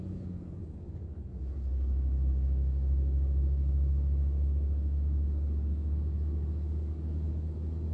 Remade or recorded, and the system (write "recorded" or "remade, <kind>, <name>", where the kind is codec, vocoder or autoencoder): remade, codec, DAC